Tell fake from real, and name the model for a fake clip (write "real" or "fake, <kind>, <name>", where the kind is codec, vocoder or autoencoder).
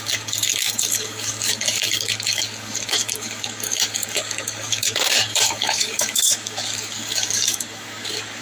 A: fake, codec, DAC